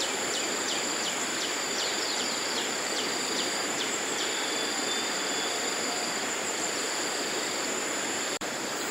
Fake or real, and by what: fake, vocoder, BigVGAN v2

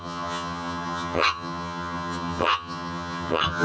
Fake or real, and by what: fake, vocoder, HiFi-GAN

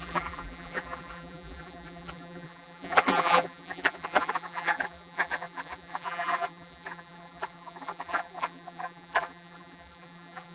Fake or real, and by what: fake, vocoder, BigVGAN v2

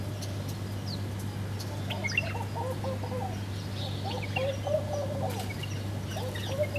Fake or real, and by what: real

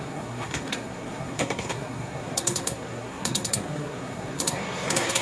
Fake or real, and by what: fake, codec, SNAC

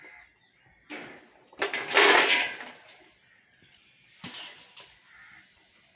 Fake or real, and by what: real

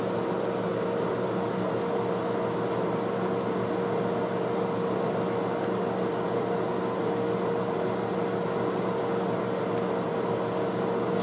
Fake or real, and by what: real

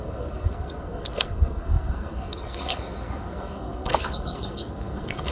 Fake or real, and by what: fake, codec, SNAC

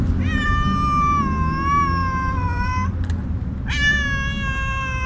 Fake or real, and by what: real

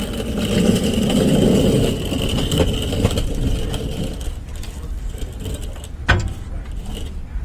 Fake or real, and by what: real